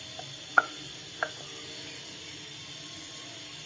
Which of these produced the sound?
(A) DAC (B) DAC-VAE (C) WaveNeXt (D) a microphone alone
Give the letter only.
D